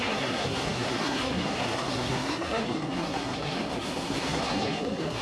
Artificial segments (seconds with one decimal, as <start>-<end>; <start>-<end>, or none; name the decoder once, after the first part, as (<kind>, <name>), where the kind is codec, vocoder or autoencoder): 0.0-5.2 (codec, SNAC)